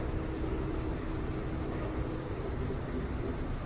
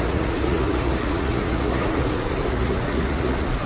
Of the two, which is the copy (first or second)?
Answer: second